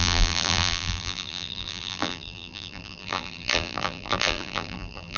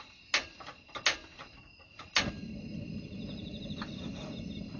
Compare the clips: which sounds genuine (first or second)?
second